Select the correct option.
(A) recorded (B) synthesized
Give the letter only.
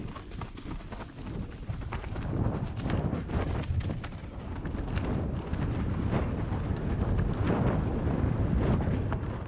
A